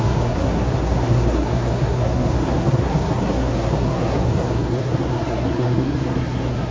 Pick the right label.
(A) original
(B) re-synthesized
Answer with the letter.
B